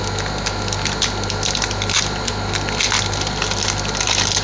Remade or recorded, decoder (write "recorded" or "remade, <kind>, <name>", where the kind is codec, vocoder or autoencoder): recorded